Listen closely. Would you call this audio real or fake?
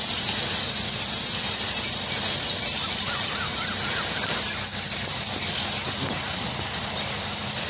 real